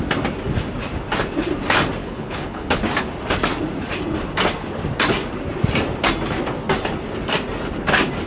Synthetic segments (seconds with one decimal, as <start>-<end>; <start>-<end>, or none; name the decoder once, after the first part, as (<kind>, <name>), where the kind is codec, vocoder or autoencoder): 2.0-2.8 (codec, HILCodec)